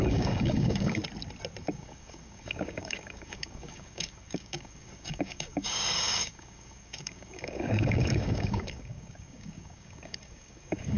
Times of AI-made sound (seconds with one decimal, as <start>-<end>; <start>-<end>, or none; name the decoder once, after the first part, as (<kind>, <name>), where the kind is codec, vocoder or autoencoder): 0.0-1.0 (codec, DAC); 1.6-11.0